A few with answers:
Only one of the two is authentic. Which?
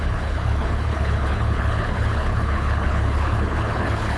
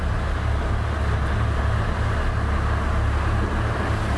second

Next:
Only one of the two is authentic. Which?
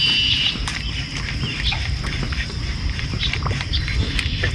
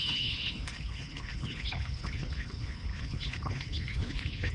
first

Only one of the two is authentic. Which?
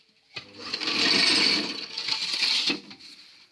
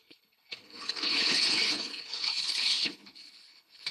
first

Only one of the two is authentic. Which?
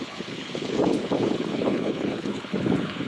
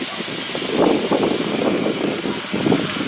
second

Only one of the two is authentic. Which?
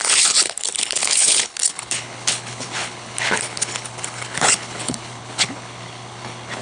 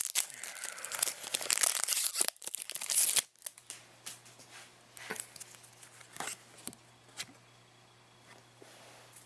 second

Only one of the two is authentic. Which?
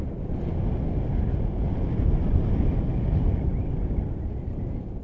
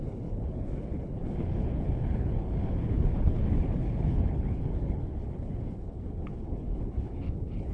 first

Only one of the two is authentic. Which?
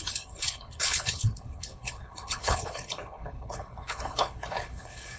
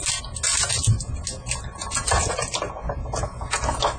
second